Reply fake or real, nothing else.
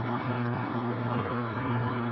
fake